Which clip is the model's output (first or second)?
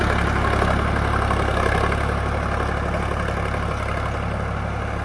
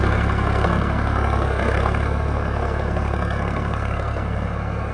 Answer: second